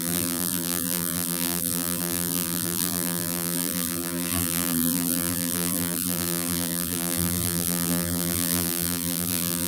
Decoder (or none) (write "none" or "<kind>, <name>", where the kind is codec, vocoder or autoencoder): vocoder, BigVGAN v2